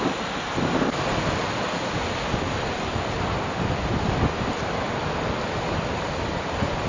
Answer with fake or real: real